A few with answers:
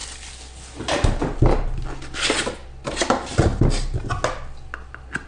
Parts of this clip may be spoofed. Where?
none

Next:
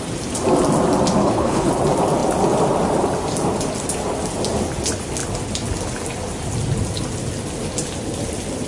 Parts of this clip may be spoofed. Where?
1.2-1.7 (codec, HILCodec)

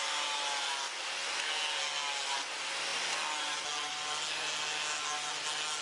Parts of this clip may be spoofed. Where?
none

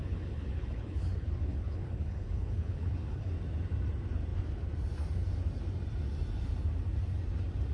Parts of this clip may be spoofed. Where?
0.0-3.3 (codec, HILCodec)

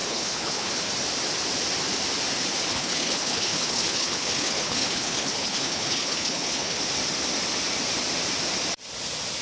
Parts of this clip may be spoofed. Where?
0.0-0.9 (codec, HILCodec); 2.7-6.8

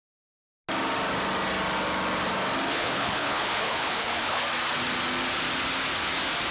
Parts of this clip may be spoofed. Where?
2.7-4.4 (codec, HILCodec)

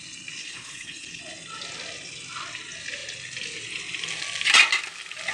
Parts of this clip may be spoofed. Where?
0.4-1.2 (codec, HILCodec)